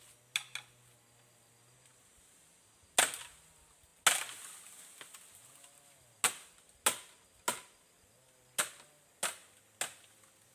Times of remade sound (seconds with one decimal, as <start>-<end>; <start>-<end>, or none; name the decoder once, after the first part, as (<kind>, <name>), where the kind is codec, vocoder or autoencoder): none